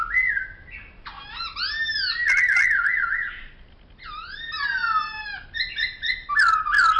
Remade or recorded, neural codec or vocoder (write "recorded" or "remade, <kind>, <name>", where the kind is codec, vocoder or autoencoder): recorded